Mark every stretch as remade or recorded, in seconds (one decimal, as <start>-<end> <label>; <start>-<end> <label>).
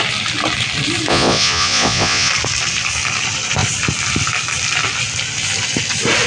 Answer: 0.0-1.1 recorded; 1.1-2.3 remade; 2.3-6.3 recorded